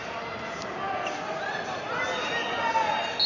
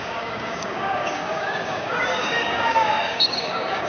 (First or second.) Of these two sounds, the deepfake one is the second